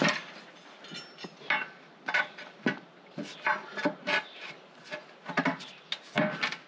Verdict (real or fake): real